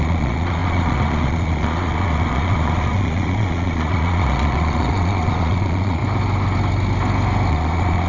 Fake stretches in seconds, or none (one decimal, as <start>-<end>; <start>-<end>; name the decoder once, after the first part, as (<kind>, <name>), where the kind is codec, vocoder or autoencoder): 0.0-6.0 (vocoder, Vocos); 7.5-8.1